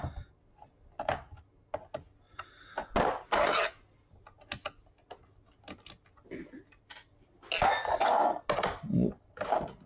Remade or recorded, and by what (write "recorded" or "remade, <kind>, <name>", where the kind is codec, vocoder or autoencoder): recorded